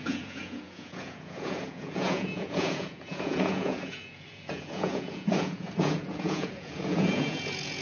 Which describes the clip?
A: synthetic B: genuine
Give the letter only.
A